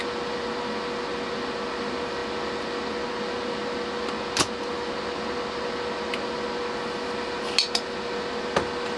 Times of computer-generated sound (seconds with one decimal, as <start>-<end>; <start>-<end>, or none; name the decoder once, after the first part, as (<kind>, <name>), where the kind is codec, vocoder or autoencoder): none